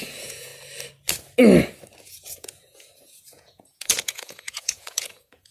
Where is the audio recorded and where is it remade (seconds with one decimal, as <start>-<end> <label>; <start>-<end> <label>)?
0.0-0.5 remade; 0.5-2.0 recorded; 2.0-5.5 remade